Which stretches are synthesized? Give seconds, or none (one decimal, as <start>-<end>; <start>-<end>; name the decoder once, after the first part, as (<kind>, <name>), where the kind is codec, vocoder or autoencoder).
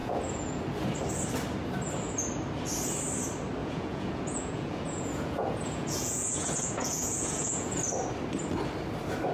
0.0-0.6 (vocoder, Vocos); 3.6-7.8